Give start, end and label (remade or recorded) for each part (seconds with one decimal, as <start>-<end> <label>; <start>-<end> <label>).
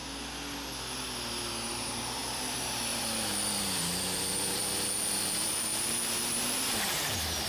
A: 0.0-1.7 recorded; 1.7-7.5 remade